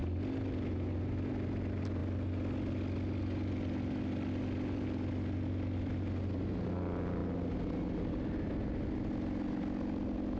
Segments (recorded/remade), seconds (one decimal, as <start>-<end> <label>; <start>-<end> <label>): 0.0-10.4 recorded